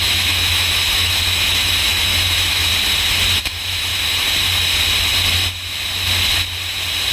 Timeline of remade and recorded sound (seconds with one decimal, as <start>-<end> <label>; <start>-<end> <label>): 0.0-2.7 remade; 2.7-3.4 recorded; 3.4-3.9 remade; 3.9-7.1 recorded